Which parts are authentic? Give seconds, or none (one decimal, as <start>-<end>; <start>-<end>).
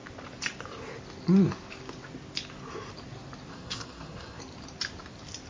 0.0-3.5; 4.4-5.5